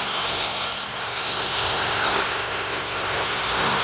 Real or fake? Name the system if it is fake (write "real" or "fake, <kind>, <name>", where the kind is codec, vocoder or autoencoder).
fake, codec, SNAC